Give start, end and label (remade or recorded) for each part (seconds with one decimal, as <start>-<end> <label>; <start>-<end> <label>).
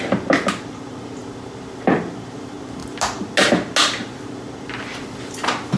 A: 0.0-5.8 recorded